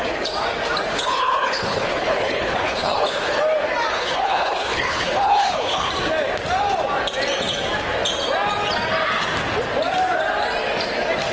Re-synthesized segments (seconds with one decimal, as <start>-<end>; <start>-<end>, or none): 0.9-3.4; 3.9-5.9